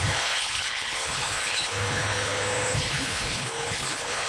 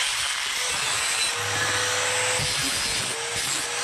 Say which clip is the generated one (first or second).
first